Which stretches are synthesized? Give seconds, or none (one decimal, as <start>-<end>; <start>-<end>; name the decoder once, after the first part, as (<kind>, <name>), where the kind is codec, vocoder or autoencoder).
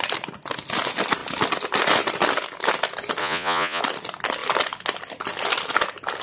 3.2-3.8 (vocoder, Vocos)